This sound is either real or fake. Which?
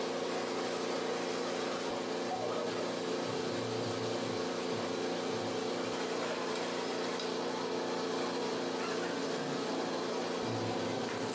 real